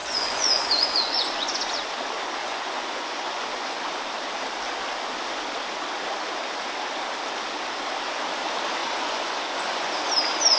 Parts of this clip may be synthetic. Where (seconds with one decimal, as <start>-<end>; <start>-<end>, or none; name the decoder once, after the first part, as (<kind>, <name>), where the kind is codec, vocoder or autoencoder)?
0.0-1.7 (vocoder, Vocos); 2.4-3.8; 8.8-9.9